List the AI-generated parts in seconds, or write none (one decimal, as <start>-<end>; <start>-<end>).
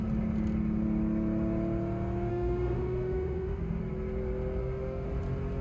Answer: 2.3-3.8; 4.6-5.1